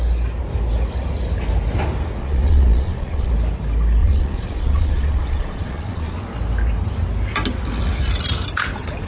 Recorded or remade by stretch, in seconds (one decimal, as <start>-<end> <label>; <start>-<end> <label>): 0.0-2.2 recorded; 2.2-3.3 remade; 3.3-4.0 recorded; 4.0-6.1 remade; 6.1-9.1 recorded